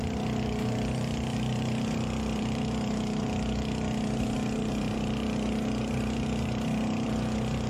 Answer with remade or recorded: remade